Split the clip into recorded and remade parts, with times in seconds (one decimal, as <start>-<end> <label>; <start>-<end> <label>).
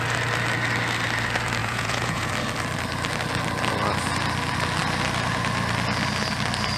0.0-1.6 recorded; 1.6-2.3 remade; 2.3-6.8 recorded